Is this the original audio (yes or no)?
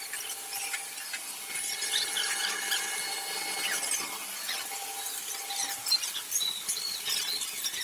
yes